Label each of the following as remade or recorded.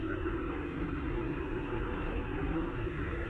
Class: remade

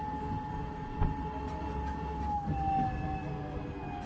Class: recorded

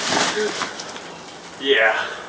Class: recorded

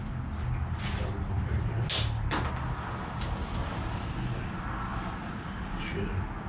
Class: recorded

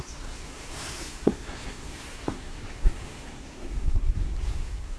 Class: remade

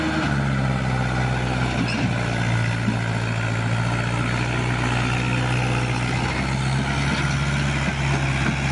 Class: recorded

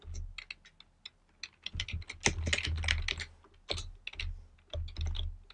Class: recorded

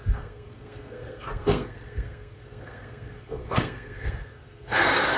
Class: remade